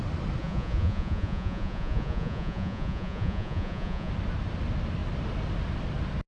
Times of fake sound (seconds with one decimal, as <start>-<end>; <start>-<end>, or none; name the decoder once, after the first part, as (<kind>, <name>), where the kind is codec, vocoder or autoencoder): 0.4-4.1 (vocoder, Vocos)